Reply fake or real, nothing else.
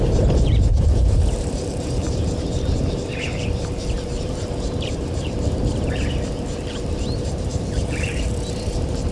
fake